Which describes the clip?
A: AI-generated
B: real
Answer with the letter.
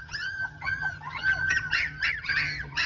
A